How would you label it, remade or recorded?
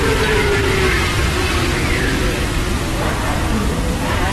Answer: recorded